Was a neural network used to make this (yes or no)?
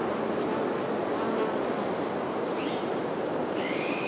no